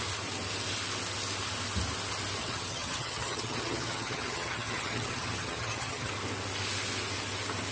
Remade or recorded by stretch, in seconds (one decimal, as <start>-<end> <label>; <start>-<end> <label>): 0.0-2.4 recorded; 2.4-6.1 remade; 6.1-7.7 recorded